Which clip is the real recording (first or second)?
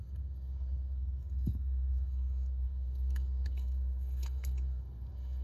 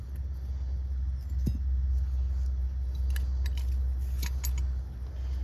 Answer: second